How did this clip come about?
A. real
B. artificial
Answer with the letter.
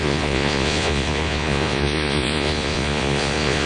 B